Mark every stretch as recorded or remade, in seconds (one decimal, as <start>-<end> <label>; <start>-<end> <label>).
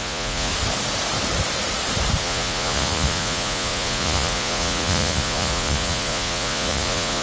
0.0-0.5 remade; 0.5-2.2 recorded; 2.2-7.2 remade